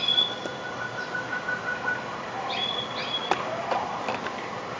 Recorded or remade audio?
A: recorded